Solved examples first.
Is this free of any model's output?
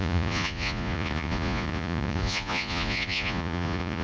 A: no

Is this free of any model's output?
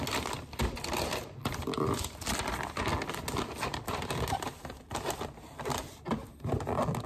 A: yes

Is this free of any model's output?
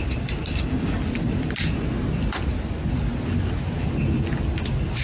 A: yes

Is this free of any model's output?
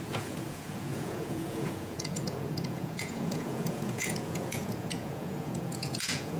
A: no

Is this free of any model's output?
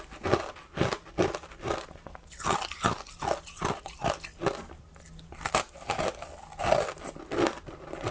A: yes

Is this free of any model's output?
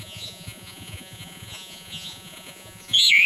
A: no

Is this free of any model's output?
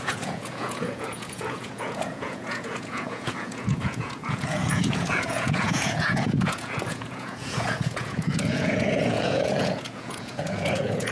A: no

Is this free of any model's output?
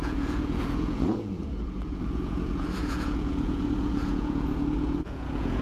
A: no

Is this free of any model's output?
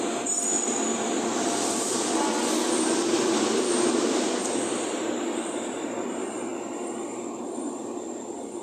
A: yes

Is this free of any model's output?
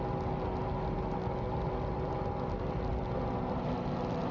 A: yes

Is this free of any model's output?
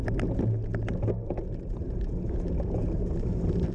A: yes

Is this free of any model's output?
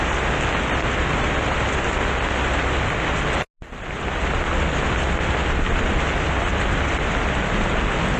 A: yes